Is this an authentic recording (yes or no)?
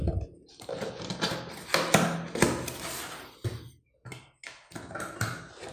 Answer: yes